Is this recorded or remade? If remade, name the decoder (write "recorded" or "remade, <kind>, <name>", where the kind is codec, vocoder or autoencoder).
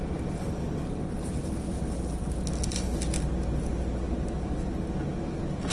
recorded